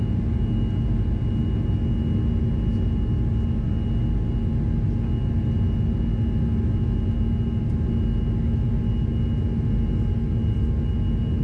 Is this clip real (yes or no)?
yes